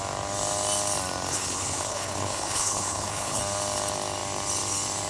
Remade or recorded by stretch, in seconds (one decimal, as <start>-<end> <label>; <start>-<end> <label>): 0.0-1.3 recorded; 1.3-3.4 remade; 3.4-5.1 recorded